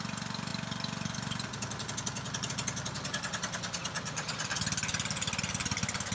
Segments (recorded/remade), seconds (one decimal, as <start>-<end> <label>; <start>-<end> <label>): 0.0-6.1 recorded

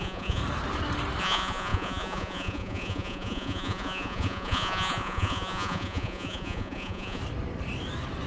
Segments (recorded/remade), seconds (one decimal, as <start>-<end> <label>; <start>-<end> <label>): 0.0-0.4 remade; 0.4-1.2 recorded; 1.2-7.2 remade; 7.2-8.3 recorded

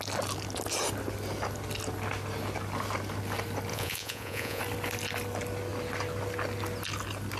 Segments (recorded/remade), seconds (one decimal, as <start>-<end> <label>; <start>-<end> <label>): 0.0-3.7 recorded; 3.7-4.6 remade; 4.6-7.4 recorded

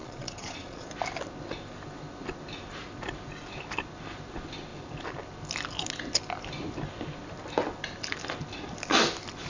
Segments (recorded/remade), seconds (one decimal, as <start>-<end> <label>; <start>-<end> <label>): 0.0-0.9 remade; 0.9-9.5 recorded